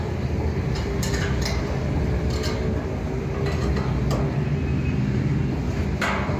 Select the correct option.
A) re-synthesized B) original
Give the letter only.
B